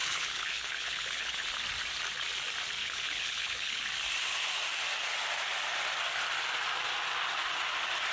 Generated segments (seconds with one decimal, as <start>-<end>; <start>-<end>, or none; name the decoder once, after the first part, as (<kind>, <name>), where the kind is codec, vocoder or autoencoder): 0.0-1.5 (codec, HILCodec); 2.8-3.8